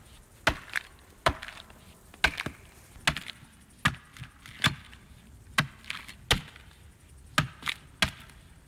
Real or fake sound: real